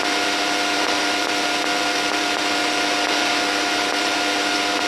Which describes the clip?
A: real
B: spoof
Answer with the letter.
A